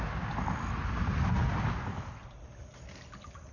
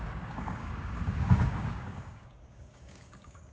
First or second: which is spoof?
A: second